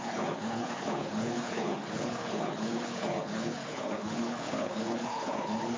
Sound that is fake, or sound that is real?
fake